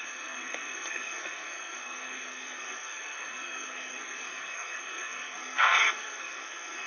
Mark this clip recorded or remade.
remade